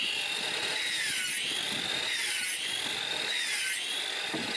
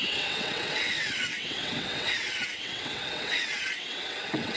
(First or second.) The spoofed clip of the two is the second